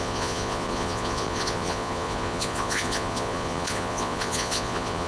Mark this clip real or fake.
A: fake